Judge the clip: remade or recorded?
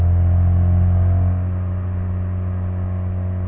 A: recorded